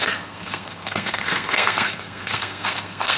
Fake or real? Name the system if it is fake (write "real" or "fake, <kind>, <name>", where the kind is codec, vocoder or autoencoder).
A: fake, codec, SNAC